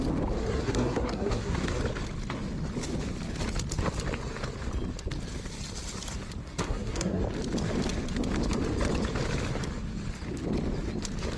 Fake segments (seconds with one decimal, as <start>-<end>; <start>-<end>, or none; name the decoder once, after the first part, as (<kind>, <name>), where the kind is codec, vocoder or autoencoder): 0.4-1.8 (codec, SNAC); 6.4-7.2